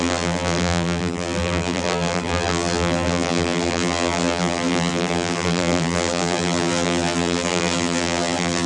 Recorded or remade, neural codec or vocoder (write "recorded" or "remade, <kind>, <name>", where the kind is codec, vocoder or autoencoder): remade, vocoder, BigVGAN v2